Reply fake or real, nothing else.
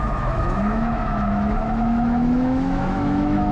fake